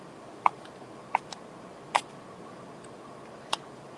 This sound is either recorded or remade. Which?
recorded